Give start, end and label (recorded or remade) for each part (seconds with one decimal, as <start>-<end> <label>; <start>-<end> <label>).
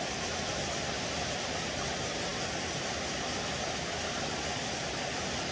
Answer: 0.0-5.5 recorded